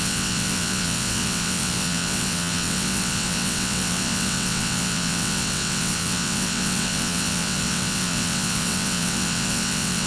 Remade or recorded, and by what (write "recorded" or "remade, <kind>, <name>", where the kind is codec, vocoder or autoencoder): remade, vocoder, WaveNeXt